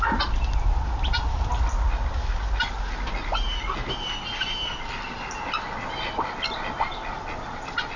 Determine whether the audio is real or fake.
real